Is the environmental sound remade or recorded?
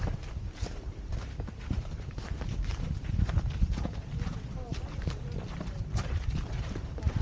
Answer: remade